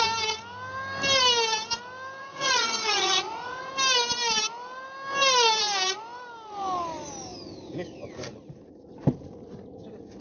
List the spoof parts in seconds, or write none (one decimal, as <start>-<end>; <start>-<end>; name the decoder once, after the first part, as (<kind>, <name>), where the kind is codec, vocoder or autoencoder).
2.2-3.7 (vocoder, Vocos)